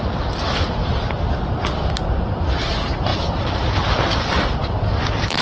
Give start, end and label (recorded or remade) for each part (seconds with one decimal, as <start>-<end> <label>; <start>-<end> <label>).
0.0-5.4 recorded

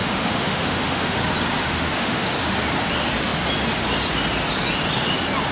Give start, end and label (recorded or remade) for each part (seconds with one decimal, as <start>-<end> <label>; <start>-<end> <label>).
0.0-1.2 remade; 1.2-1.6 recorded; 1.6-2.3 remade; 2.3-5.5 recorded

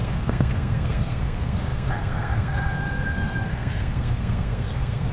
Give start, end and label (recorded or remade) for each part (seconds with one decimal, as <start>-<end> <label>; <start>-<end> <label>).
0.0-5.1 remade

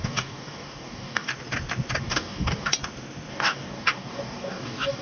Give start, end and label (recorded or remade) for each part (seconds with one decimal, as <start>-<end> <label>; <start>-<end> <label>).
0.0-1.3 remade; 1.3-2.0 recorded; 2.0-2.7 remade; 2.7-3.3 recorded; 3.3-5.0 remade

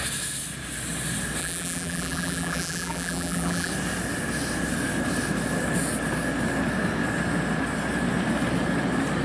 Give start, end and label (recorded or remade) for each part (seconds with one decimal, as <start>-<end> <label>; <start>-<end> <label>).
0.0-1.4 recorded; 1.4-3.7 remade; 3.7-9.2 recorded

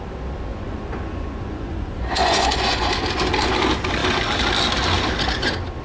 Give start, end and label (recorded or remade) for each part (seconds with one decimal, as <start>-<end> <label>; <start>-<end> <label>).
0.0-0.5 recorded; 0.5-2.9 remade; 2.9-5.8 recorded